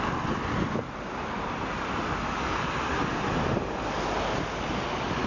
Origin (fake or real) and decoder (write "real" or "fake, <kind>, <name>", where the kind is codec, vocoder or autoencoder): real